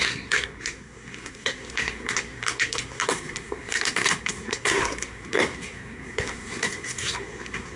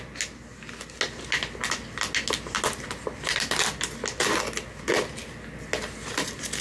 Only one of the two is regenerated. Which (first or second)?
first